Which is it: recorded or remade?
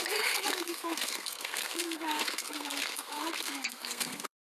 remade